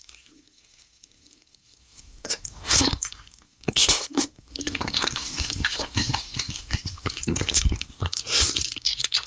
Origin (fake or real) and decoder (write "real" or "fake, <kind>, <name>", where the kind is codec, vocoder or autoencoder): fake, codec, SNAC